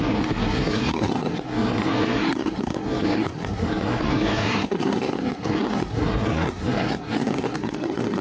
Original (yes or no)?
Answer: no